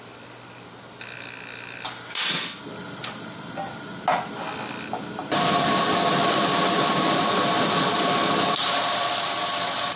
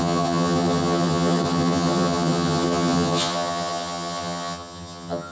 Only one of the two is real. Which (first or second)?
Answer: first